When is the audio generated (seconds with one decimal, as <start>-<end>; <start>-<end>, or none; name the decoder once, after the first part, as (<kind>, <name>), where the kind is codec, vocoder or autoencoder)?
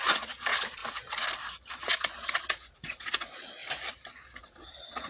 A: 0.0-0.8 (vocoder, Vocos); 1.8-3.6; 4.4-5.1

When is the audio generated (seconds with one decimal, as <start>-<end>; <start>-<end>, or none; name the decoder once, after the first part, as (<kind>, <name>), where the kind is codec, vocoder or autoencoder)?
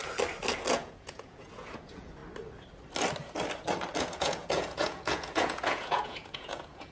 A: 0.7-2.2 (vocoder, Vocos); 4.0-6.9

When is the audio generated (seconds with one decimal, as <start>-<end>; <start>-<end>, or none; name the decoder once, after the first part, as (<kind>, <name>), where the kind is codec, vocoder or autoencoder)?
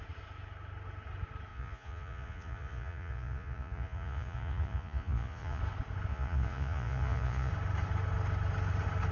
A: 1.5-5.6 (vocoder, Vocos); 6.1-7.5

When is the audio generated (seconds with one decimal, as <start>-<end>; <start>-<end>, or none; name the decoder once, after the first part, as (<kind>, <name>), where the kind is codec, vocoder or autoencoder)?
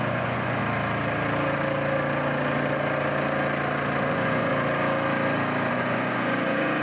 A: 0.0-0.6 (vocoder, Vocos); 4.1-4.5; 5.7-6.8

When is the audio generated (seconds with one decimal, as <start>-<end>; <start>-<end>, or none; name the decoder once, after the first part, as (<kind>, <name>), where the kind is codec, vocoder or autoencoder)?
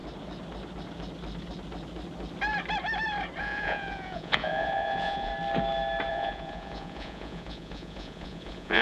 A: 3.4-5.3 (vocoder, Vocos); 6.1-8.8